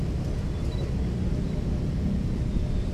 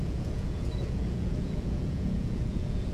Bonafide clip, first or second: first